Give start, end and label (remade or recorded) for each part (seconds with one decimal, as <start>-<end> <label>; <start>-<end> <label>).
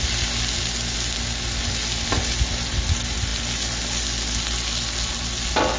0.0-5.8 recorded